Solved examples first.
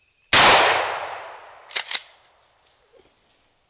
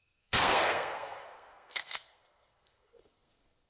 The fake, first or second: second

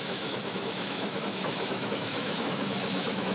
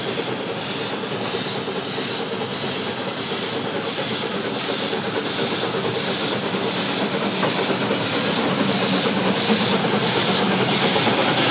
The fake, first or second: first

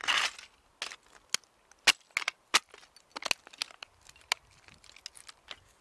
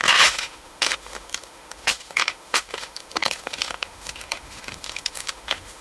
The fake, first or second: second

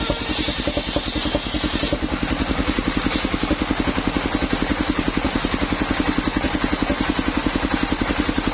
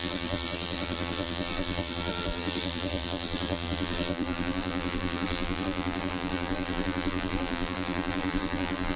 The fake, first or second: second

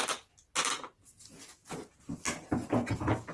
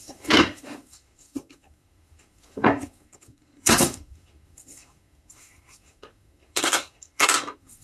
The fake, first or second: second